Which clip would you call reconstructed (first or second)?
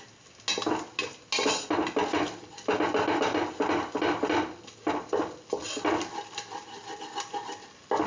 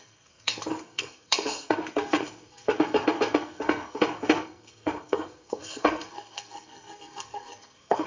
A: second